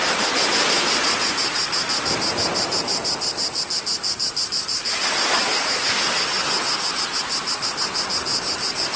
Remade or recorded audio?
recorded